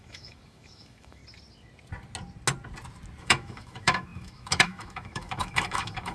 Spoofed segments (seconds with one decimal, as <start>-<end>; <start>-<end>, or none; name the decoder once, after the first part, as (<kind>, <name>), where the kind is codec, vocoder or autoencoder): 0.0-1.2 (autoencoder, DAC-VAE); 3.2-6.1